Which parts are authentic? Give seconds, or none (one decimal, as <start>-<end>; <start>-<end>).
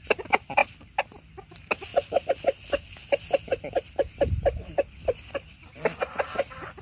0.6-1.5; 1.9-6.0